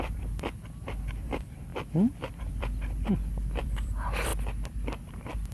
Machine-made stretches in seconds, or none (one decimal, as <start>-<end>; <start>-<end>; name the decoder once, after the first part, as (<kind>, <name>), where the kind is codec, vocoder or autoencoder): 0.0-4.3 (vocoder, BigVGAN v2); 5.0-5.5